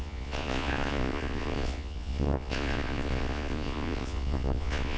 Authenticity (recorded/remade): remade